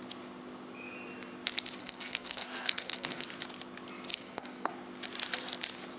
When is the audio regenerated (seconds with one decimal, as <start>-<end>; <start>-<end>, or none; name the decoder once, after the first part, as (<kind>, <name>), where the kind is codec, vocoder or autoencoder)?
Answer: 1.8-3.3 (codec, SNAC); 4.1-4.7